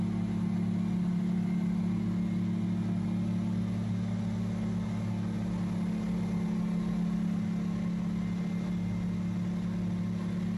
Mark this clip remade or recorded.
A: recorded